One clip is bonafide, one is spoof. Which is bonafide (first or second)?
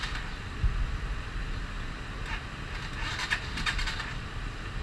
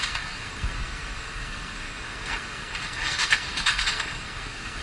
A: first